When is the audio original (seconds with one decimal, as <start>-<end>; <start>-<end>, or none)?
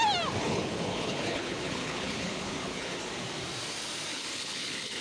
0.0-0.4; 3.0-4.1